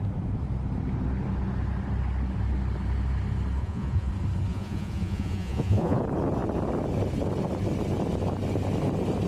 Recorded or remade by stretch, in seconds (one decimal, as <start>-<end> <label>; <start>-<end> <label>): 0.0-3.6 recorded; 3.6-4.1 remade; 4.1-4.5 recorded; 4.5-6.0 remade; 6.0-9.3 recorded